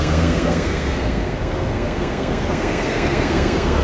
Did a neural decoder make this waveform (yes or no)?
yes